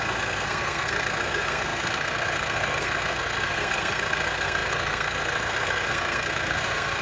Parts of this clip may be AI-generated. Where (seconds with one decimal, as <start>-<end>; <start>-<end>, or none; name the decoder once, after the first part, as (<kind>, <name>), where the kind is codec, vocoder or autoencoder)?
0.0-7.0 (codec, SNAC)